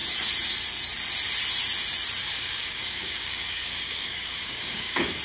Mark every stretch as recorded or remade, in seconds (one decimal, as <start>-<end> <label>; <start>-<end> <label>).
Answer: 0.0-2.2 recorded; 2.2-5.2 remade